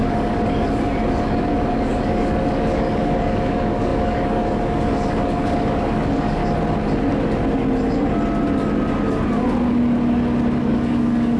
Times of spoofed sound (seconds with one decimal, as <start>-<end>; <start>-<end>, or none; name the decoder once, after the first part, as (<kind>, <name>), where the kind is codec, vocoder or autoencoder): 0.0-6.4 (codec, DAC); 10.6-11.4